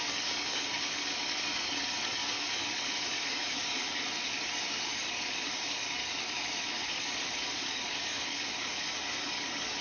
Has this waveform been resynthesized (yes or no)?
yes